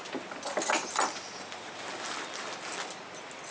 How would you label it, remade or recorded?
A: recorded